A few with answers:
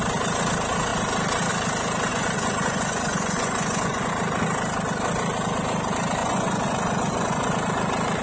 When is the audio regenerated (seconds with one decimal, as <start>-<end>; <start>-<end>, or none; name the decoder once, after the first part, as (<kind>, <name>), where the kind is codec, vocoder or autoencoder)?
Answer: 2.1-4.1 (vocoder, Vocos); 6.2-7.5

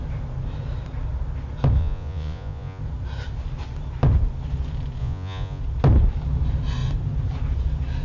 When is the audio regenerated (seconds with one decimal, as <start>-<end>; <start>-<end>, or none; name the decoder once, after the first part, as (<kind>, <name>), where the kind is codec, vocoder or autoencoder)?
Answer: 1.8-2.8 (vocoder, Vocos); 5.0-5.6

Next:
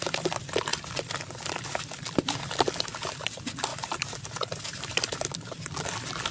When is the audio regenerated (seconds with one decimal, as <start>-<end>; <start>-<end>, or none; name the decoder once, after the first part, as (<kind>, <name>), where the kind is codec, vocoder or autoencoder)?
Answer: 3.7-5.6 (vocoder, BigVGAN v2)